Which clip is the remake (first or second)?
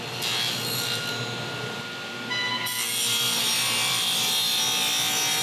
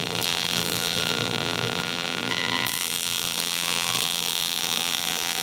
second